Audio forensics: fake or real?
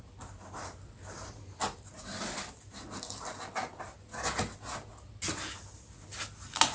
real